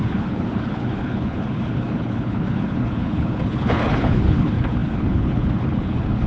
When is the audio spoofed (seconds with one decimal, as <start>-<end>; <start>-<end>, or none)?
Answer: 0.0-6.3